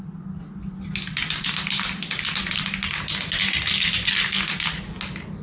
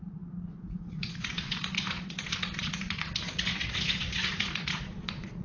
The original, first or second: first